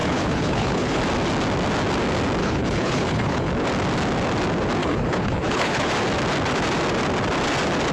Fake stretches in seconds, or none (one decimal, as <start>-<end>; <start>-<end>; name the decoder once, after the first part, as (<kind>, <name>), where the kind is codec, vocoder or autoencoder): 0.0-1.0 (codec, HILCodec); 2.4-3.5; 4.8-5.9